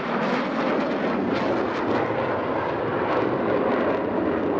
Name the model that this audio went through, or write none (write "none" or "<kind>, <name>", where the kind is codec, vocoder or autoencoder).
none